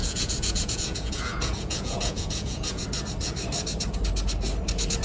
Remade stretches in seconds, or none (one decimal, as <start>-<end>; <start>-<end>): 0.0-2.8